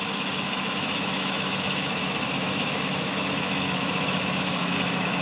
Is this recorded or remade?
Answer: remade